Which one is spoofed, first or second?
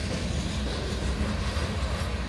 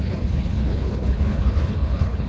second